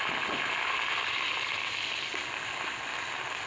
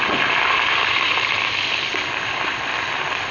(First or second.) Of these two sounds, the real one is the first